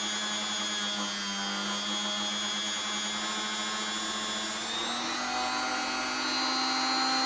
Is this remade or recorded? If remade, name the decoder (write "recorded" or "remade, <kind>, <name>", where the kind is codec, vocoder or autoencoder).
recorded